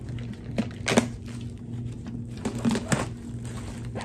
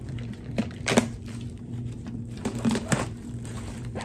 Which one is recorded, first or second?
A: first